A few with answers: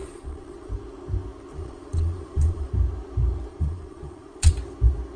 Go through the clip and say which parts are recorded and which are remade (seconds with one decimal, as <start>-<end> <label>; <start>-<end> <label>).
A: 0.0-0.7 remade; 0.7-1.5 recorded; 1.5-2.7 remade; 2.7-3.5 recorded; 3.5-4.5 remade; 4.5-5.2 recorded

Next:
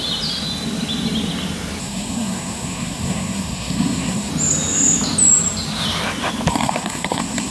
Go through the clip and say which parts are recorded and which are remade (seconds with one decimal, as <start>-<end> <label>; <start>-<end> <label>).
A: 0.0-1.8 recorded; 1.8-4.3 remade; 4.3-6.5 recorded; 6.5-7.5 remade

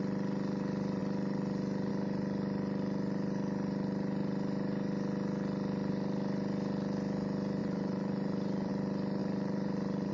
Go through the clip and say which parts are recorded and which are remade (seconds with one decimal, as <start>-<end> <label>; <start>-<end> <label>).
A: 0.0-7.6 recorded; 7.6-8.7 remade; 8.7-9.2 recorded; 9.2-10.1 remade

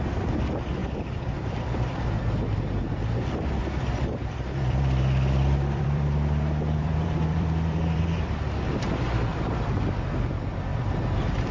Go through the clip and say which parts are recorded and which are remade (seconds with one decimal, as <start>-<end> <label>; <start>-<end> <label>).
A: 0.0-0.8 recorded; 0.8-2.3 remade; 2.3-3.6 recorded; 3.6-8.0 remade; 8.0-9.3 recorded; 9.3-9.8 remade; 9.8-10.7 recorded; 10.7-11.5 remade

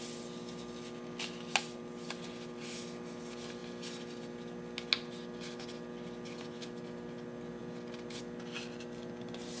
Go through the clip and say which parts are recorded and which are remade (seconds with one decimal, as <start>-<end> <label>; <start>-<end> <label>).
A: 0.0-9.6 recorded

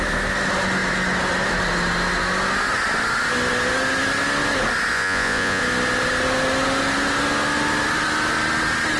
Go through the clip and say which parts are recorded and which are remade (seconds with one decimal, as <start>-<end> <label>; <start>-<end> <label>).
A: 0.0-4.9 recorded; 4.9-5.6 remade; 5.6-9.0 recorded